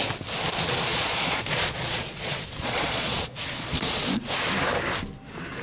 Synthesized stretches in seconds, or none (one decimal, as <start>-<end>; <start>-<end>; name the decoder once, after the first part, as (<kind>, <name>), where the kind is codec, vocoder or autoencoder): 0.9-4.3 (vocoder, Vocos)

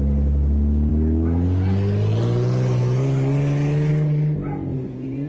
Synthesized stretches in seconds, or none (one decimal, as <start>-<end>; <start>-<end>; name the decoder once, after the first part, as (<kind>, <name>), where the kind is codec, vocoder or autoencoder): 4.7-5.3 (vocoder, Vocos)

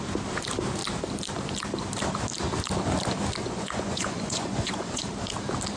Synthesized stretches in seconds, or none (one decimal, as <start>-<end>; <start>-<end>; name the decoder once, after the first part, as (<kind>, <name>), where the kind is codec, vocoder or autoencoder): 3.4-5.1 (vocoder, Vocos)

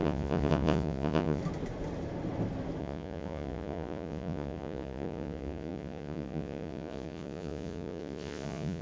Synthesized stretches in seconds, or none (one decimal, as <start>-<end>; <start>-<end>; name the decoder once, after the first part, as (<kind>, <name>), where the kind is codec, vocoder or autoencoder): 0.0-1.4 (vocoder, Vocos); 2.8-8.8

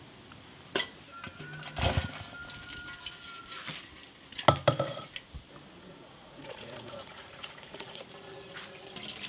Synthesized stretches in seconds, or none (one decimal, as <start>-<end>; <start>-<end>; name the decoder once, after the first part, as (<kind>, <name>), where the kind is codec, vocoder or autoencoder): 5.8-8.0 (vocoder, Vocos)